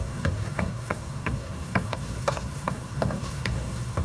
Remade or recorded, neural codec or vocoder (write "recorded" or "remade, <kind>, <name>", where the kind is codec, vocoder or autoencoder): remade, codec, SNAC